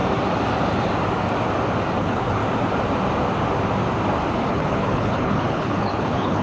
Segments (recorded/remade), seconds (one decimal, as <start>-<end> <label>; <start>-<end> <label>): 0.0-2.0 recorded; 2.0-2.4 remade; 2.4-4.5 recorded; 4.5-6.4 remade